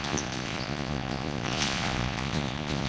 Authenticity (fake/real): fake